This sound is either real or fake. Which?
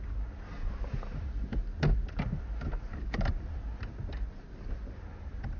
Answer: real